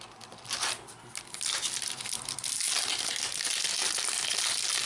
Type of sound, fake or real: real